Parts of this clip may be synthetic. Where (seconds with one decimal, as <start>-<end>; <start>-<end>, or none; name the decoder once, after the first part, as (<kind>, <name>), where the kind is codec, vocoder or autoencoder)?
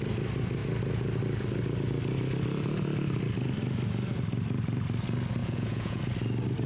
5.4-6.0 (vocoder, Vocos)